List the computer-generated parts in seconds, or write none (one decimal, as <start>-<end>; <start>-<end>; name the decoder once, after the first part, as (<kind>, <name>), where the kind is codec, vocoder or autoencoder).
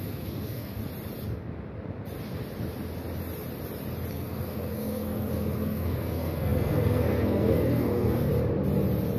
0.0-0.8 (codec, SNAC); 4.1-8.3